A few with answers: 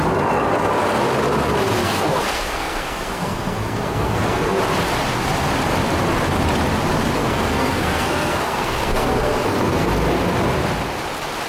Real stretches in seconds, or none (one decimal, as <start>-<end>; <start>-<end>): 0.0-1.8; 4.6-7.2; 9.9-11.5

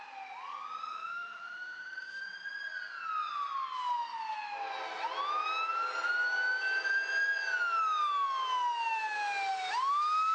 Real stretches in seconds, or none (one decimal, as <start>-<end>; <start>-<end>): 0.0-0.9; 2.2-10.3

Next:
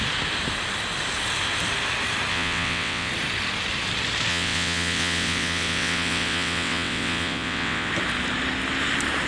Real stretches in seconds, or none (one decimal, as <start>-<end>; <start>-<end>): 0.0-2.3; 3.1-4.3; 7.9-9.3

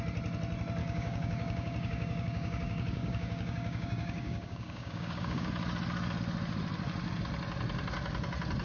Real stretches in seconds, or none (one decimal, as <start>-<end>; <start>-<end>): 0.0-0.8; 5.5-8.6

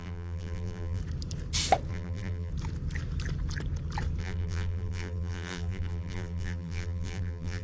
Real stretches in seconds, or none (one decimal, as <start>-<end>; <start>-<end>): 1.0-1.9; 2.5-4.2

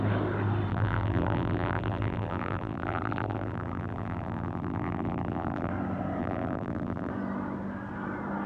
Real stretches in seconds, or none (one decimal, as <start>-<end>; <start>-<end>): 0.0-0.7; 5.7-6.2; 7.1-8.5

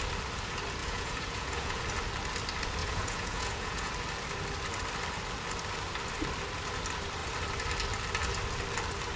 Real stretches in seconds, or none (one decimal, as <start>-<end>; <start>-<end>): 0.0-0.8; 1.8-2.8; 3.9-9.2